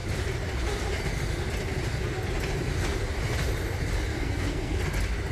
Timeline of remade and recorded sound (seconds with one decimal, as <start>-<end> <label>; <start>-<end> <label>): 0.0-4.1 recorded; 4.1-4.8 remade; 4.8-5.3 recorded